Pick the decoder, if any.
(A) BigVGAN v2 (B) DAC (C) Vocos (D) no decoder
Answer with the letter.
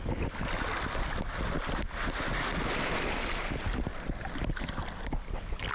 D